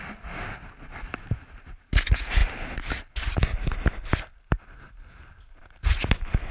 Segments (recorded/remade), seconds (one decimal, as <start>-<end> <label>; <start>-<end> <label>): 0.0-6.5 recorded